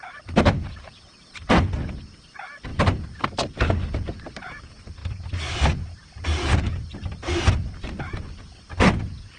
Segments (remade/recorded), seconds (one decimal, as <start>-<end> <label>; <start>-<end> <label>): 0.0-2.7 recorded; 2.7-3.3 remade; 3.3-5.0 recorded; 5.0-8.0 remade; 8.0-9.4 recorded